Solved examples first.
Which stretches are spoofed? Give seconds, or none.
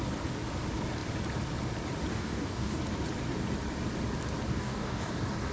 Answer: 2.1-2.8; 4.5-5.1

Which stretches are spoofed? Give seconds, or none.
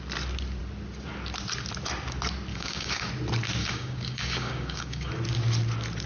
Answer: 2.5-3.1; 3.6-5.1